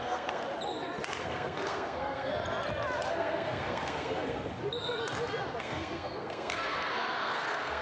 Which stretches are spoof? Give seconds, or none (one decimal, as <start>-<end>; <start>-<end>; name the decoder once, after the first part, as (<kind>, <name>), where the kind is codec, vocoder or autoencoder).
0.0-0.4 (codec, SNAC); 1.2-2.3; 3.1-4.6; 5.6-7.8